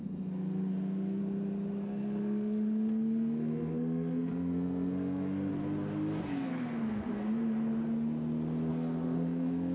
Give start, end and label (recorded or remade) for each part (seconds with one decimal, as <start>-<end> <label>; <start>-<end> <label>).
0.0-1.2 remade; 1.2-1.8 recorded; 1.8-5.5 remade; 5.5-6.3 recorded; 6.3-7.1 remade; 7.1-8.7 recorded; 8.7-9.7 remade

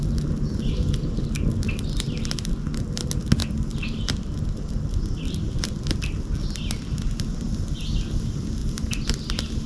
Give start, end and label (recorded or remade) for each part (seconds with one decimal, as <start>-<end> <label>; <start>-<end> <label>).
0.0-9.7 recorded

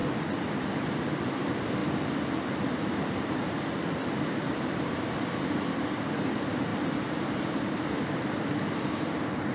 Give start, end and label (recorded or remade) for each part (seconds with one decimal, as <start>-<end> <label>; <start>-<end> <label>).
0.0-6.7 remade; 6.7-7.5 recorded; 7.5-9.5 remade